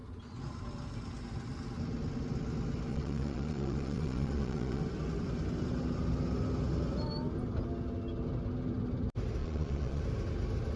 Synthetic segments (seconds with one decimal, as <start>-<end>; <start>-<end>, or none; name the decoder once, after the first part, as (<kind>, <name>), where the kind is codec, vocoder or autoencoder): 2.9-4.8 (vocoder, Vocos); 9.4-10.0